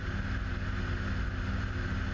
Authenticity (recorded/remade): recorded